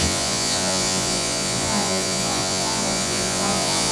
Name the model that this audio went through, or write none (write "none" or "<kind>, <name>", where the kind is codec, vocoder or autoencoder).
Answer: vocoder, Vocos